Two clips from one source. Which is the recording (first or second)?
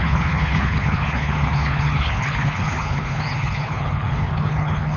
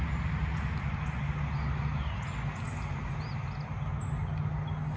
second